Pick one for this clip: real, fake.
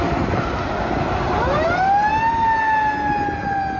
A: real